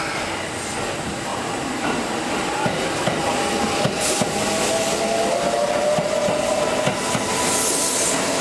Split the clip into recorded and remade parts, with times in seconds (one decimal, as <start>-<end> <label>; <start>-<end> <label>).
0.0-1.3 recorded; 1.3-2.5 remade; 2.5-8.4 recorded